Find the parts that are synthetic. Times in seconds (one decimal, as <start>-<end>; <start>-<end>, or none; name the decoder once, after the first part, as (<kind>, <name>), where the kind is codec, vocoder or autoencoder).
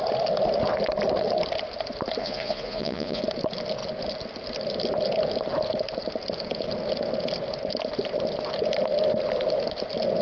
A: 2.2-3.2 (vocoder, Vocos)